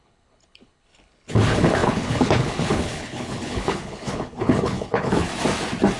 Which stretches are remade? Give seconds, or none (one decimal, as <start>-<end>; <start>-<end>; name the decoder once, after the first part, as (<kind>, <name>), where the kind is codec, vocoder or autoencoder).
0.0-5.3 (codec, HILCodec)